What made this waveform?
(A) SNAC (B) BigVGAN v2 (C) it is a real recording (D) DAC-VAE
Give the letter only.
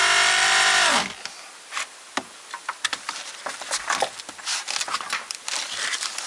C